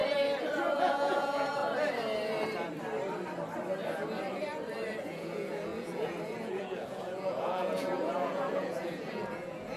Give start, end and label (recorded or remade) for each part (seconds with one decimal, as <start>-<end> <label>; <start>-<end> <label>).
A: 0.0-0.7 recorded; 0.7-1.6 remade; 1.6-5.0 recorded; 5.0-9.8 remade